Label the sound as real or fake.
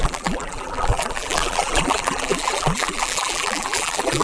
fake